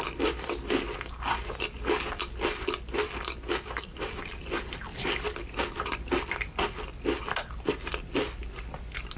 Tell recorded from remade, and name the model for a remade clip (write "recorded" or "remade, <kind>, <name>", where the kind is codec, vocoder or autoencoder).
recorded